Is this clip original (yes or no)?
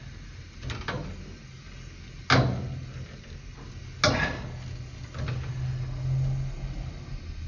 yes